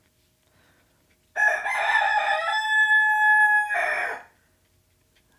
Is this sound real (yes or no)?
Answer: yes